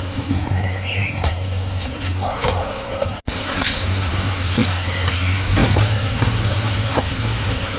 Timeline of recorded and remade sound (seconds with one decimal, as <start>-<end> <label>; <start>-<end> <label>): 0.0-7.8 remade